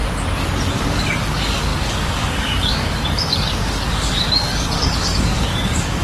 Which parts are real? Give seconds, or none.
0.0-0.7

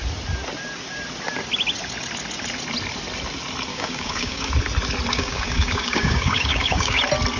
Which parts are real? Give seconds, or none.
0.0-3.7; 4.5-5.1; 7.0-7.4

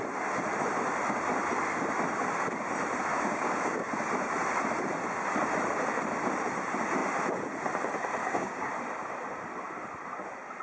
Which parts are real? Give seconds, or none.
0.0-3.1; 3.9-8.2; 8.7-10.6

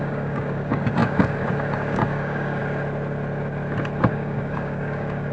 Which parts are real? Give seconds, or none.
2.6-4.1

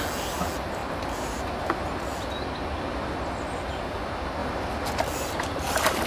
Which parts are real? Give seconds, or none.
0.0-6.1

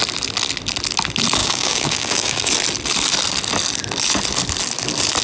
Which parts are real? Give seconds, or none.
0.0-1.4; 2.5-5.2